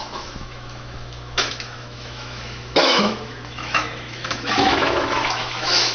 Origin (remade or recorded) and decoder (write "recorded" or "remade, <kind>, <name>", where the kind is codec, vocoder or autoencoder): remade, autoencoder, DAC-VAE